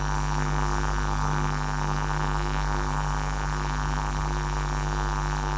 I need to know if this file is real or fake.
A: fake